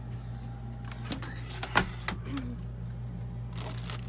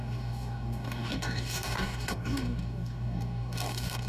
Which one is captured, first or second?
first